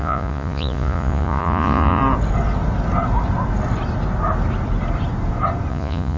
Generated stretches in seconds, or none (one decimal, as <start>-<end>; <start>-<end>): 0.0-2.0; 5.7-6.2